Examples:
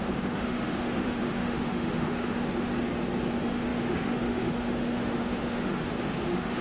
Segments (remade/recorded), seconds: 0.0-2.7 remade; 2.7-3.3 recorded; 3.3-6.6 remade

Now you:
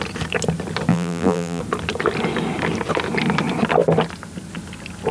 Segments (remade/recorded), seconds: 0.0-0.9 recorded; 0.9-1.6 remade; 1.6-5.1 recorded

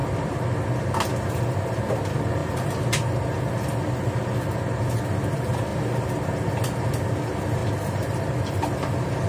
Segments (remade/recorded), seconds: 0.0-2.4 recorded; 2.4-3.4 remade; 3.4-7.6 recorded; 7.6-9.3 remade

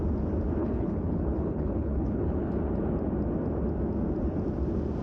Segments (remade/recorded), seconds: 0.0-0.6 recorded; 0.6-2.5 remade; 2.5-5.0 recorded

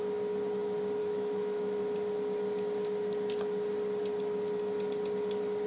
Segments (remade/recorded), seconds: 0.0-1.0 recorded; 1.0-1.8 remade; 1.8-5.7 recorded